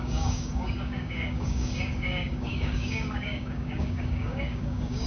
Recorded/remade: remade